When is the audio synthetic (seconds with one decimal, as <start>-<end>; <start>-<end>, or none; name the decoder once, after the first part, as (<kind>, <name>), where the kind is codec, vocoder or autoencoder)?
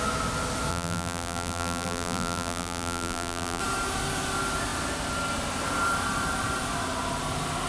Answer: 0.7-3.6 (vocoder, BigVGAN v2)